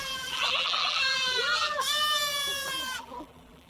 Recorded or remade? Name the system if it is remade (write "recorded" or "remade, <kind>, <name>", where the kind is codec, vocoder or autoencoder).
remade, vocoder, BigVGAN v2